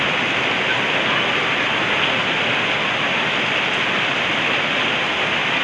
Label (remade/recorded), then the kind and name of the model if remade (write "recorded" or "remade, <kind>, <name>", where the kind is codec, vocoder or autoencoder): recorded